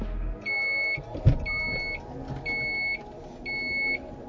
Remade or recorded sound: recorded